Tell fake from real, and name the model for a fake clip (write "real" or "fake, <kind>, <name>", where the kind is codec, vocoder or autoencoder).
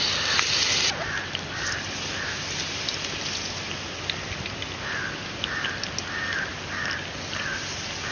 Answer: real